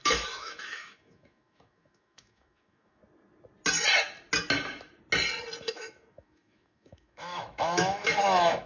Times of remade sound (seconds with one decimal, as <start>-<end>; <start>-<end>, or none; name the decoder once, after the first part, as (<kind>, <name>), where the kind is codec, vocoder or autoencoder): 0.0-3.0 (autoencoder, DAC-VAE); 5.6-8.7